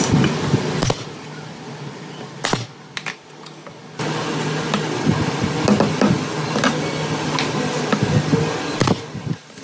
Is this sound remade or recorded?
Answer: recorded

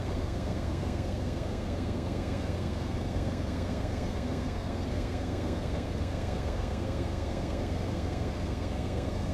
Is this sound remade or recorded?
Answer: remade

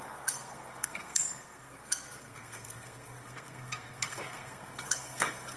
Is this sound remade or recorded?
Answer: remade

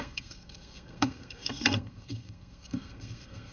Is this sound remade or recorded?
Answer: remade